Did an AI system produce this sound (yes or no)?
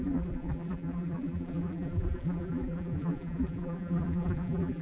yes